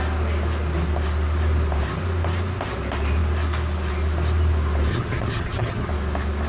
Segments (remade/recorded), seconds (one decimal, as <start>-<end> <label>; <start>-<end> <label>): 0.0-4.9 recorded; 4.9-5.9 remade; 5.9-6.5 recorded